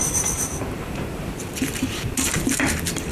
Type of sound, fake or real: fake